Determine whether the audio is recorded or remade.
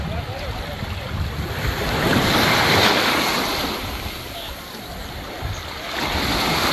remade